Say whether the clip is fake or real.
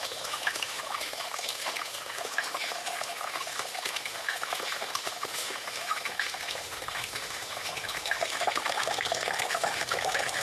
fake